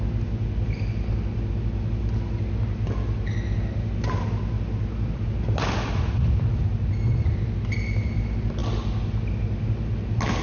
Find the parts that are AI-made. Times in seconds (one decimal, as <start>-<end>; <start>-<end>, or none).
none